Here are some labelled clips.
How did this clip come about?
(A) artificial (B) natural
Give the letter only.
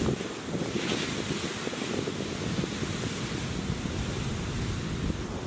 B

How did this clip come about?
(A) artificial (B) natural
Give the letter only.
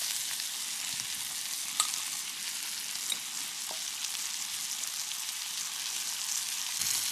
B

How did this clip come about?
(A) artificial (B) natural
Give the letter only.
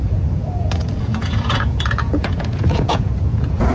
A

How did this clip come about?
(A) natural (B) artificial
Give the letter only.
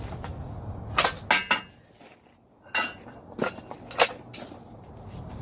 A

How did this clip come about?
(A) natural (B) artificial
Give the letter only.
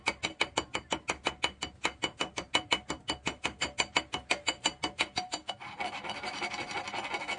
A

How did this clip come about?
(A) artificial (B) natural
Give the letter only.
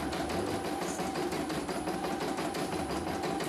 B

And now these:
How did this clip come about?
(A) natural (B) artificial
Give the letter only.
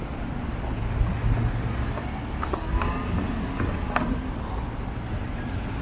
A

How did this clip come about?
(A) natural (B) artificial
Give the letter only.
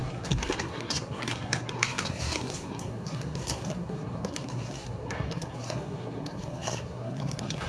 B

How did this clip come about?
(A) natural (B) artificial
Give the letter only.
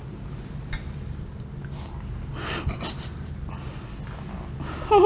A